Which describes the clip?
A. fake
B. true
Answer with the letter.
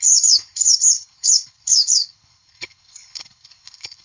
A